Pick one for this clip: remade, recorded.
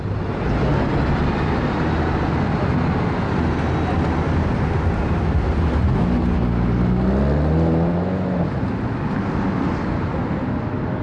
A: recorded